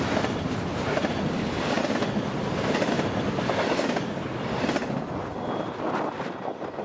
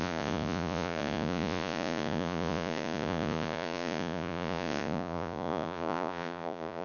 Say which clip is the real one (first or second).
first